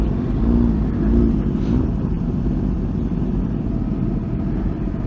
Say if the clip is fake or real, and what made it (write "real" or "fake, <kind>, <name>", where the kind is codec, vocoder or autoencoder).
fake, vocoder, BigVGAN v2